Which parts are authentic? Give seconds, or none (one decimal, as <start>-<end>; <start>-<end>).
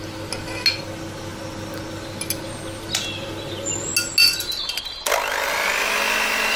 0.0-6.6